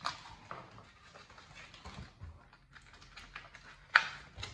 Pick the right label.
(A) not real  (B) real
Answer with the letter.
B